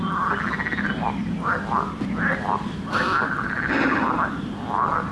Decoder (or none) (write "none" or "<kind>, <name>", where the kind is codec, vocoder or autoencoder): none